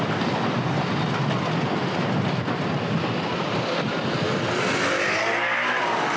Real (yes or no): yes